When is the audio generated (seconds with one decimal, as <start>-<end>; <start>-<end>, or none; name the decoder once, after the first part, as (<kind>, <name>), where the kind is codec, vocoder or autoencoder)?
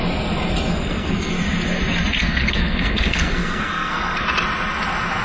0.7-1.3 (codec, SNAC); 2.2-4.2